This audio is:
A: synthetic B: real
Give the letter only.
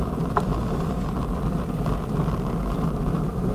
B